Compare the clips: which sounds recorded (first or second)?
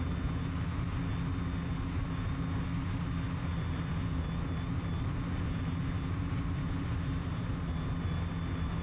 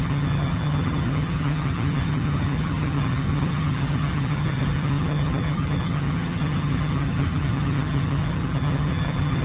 first